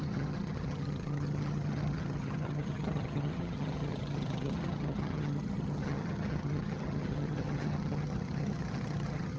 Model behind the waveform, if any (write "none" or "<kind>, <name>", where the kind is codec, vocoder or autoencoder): vocoder, HiFi-GAN